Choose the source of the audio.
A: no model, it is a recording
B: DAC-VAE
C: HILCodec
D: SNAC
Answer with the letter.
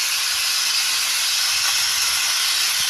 A